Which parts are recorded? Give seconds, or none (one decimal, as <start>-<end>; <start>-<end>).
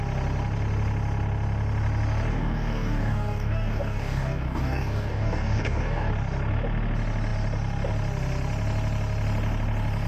0.0-2.3; 6.1-10.1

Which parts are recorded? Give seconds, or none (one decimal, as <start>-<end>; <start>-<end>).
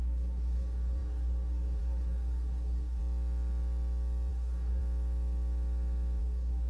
3.0-4.3; 4.8-6.2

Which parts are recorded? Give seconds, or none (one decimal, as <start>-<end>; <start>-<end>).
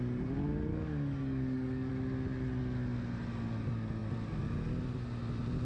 0.0-0.7; 1.9-5.7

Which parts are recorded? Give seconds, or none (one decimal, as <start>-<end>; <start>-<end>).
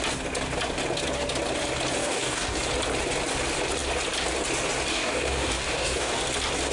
0.0-2.0; 2.6-4.9; 6.2-6.7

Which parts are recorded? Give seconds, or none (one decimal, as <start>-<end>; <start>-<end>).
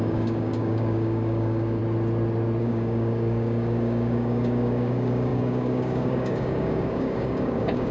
1.8-2.6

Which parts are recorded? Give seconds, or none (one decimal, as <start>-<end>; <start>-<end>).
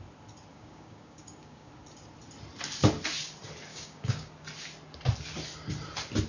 0.0-0.5; 1.7-3.7; 4.3-6.3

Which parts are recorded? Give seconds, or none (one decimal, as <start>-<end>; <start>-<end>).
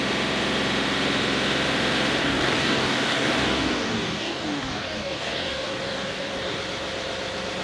0.0-2.2; 6.6-7.6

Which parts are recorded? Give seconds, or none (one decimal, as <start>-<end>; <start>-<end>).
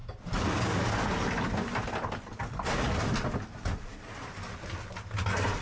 0.0-5.6